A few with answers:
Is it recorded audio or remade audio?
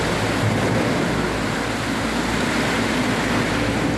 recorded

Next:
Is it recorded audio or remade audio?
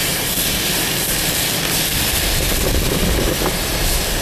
recorded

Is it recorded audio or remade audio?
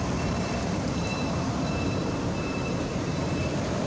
remade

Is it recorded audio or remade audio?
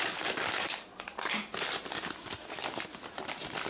recorded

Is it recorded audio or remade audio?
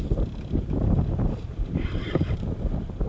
recorded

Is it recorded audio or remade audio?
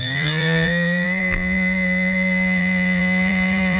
remade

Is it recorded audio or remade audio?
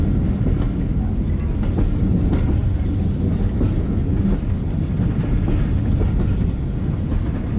recorded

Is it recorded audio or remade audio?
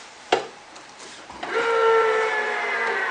remade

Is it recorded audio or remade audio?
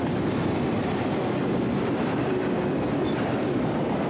remade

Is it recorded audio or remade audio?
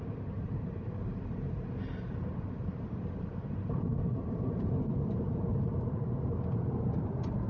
remade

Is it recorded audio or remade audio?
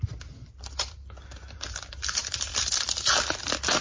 remade